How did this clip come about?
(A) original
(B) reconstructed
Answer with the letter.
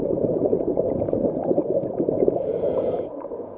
B